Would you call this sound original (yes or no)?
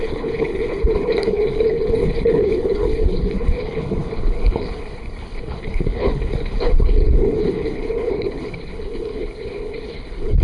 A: no